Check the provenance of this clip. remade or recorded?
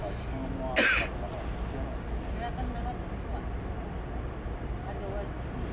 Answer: recorded